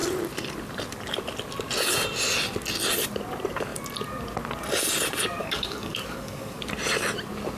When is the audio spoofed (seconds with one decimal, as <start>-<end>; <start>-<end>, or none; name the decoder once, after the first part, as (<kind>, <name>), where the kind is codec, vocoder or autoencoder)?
5.4-6.6 (codec, DAC)